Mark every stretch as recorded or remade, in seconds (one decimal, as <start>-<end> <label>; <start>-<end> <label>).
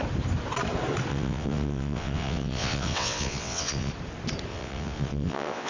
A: 0.0-1.1 recorded; 1.1-3.9 remade; 3.9-4.5 recorded; 4.5-5.7 remade